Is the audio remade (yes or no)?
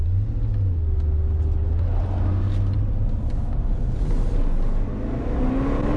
no